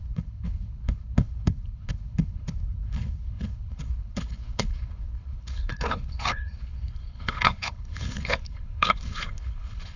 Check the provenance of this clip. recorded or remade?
remade